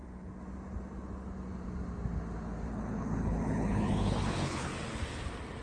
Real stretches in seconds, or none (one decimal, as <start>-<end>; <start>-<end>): 0.0-2.7; 4.7-5.6